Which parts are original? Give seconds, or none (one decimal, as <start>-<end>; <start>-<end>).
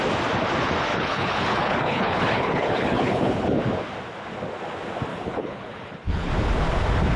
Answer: 0.0-0.9; 3.6-5.1; 6.3-7.2